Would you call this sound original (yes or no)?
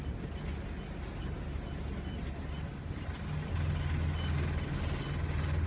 yes